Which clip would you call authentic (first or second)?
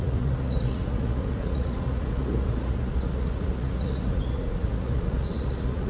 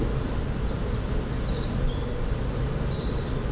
second